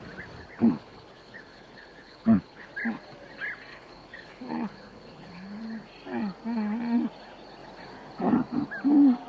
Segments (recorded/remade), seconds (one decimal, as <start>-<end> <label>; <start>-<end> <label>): 0.0-0.6 recorded; 0.6-2.7 remade; 2.7-3.7 recorded; 3.7-5.6 remade; 5.6-9.3 recorded